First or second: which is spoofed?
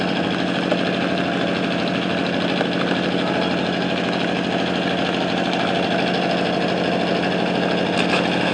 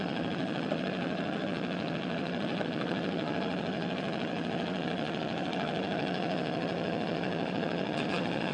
second